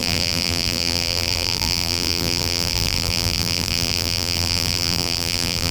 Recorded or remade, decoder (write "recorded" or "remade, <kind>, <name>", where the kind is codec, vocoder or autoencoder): remade, vocoder, BigVGAN v2